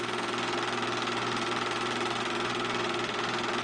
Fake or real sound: real